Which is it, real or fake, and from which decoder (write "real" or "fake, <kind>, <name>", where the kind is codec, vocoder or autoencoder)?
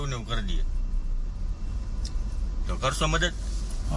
real